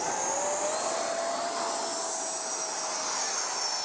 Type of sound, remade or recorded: recorded